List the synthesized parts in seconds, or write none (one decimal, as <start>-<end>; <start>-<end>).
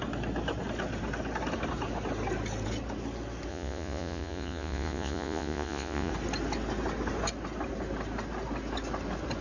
3.5-6.1